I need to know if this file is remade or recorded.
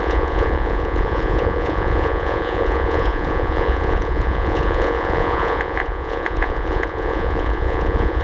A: remade